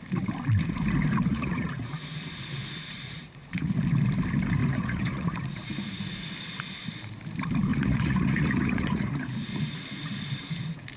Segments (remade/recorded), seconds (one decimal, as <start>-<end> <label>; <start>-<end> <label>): 0.0-1.3 recorded; 1.3-3.8 remade; 3.8-4.6 recorded; 4.6-6.3 remade; 6.3-7.7 recorded; 7.7-9.7 remade; 9.7-11.0 recorded